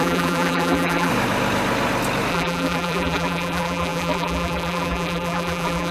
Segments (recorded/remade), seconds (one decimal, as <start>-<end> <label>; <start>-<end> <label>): 0.0-1.1 remade; 1.1-2.3 recorded; 2.3-5.9 remade